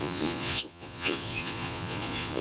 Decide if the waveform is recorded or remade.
remade